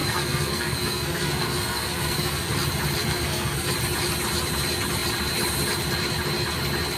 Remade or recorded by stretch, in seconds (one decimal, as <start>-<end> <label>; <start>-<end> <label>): 0.0-2.5 remade; 2.5-3.0 recorded; 3.0-3.7 remade; 3.7-7.0 recorded